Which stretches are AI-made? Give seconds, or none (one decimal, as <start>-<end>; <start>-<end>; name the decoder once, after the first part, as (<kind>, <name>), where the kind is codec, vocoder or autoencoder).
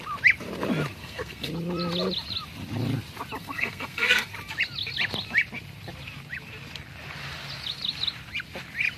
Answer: 1.0-1.5 (codec, SNAC); 3.4-4.3